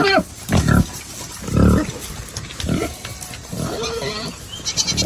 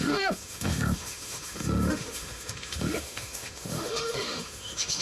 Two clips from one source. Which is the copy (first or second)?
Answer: second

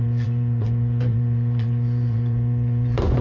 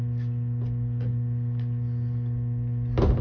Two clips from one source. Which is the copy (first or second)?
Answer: first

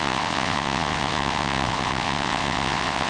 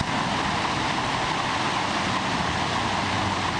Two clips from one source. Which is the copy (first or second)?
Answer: first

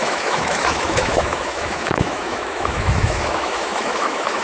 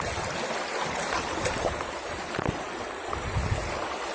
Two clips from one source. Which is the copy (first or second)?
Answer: first